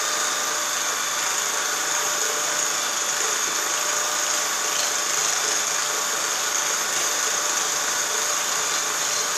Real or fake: real